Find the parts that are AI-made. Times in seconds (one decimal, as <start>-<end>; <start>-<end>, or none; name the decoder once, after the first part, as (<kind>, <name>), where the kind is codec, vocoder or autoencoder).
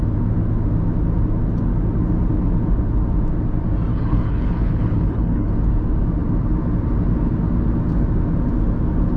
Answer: 3.9-5.5 (codec, HILCodec)